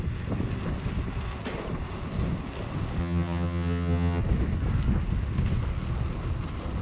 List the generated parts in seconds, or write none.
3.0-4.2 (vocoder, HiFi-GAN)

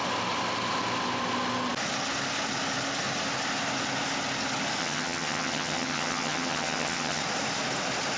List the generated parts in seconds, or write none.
4.8-7.2 (vocoder, HiFi-GAN)

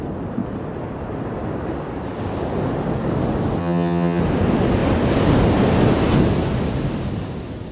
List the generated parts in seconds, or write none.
3.6-4.2 (vocoder, HiFi-GAN)

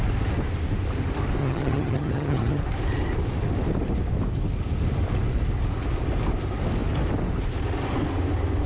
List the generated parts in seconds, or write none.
1.4-2.6 (vocoder, HiFi-GAN)

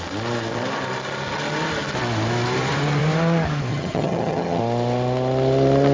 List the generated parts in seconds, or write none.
3.7-4.6 (vocoder, HiFi-GAN)

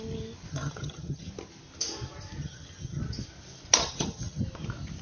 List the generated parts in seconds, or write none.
0.5-1.3 (vocoder, HiFi-GAN); 2.4-3.0; 3.8-4.4

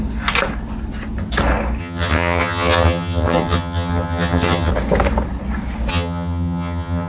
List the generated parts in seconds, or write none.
1.8-4.7 (vocoder, HiFi-GAN); 5.9-7.1

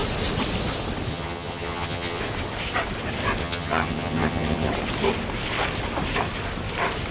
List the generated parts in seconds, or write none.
1.1-2.2 (vocoder, HiFi-GAN); 3.4-4.7